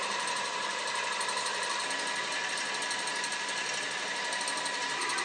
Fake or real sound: real